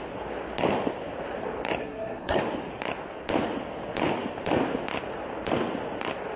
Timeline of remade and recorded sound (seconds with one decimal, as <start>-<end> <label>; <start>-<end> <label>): 0.0-1.8 recorded; 1.8-2.4 remade; 2.4-6.4 recorded